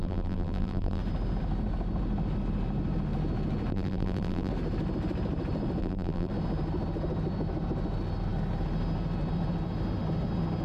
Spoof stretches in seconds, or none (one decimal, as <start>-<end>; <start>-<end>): 0.0-1.0; 3.7-4.5; 5.8-6.3